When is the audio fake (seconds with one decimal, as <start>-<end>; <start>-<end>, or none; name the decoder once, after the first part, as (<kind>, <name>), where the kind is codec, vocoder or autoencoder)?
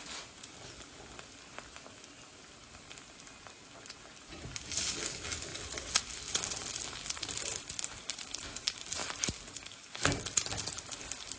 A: none